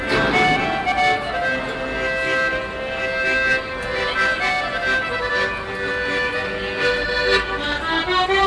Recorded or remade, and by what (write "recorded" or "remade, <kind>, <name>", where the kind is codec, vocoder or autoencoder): recorded